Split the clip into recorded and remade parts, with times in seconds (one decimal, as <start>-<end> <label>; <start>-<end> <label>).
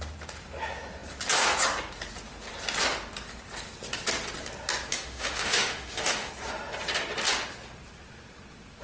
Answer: 0.0-4.9 recorded; 4.9-6.3 remade; 6.3-8.8 recorded